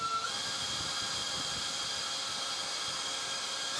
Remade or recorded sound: recorded